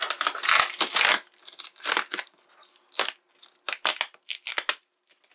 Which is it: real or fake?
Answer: real